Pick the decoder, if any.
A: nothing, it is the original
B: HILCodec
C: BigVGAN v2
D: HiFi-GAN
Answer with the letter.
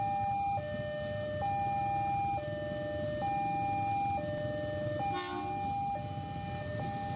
A